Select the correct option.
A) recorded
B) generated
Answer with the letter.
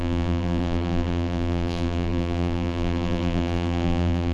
B